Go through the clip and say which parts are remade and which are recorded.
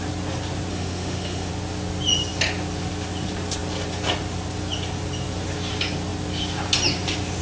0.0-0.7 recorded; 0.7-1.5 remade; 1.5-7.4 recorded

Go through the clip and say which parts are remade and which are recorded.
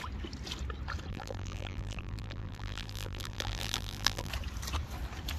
0.0-1.1 recorded; 1.1-4.3 remade; 4.3-5.4 recorded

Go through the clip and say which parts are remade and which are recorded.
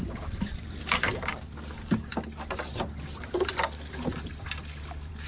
0.0-2.1 remade; 2.1-2.7 recorded; 2.7-5.3 remade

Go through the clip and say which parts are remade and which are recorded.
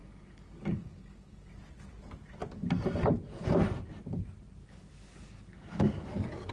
0.0-1.5 remade; 1.5-4.6 recorded; 4.6-6.5 remade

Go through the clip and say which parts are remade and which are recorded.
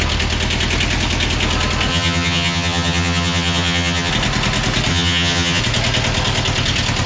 0.0-1.9 recorded; 1.9-4.1 remade; 4.1-4.9 recorded; 4.9-5.6 remade; 5.6-7.1 recorded